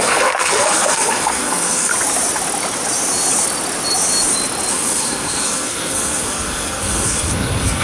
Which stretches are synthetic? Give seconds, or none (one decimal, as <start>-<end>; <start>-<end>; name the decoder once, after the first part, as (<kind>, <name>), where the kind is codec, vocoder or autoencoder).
0.0-1.9 (codec, SNAC); 4.7-7.8